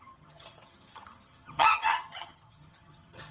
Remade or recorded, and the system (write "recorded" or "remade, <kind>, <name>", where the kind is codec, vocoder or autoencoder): remade, vocoder, HiFi-GAN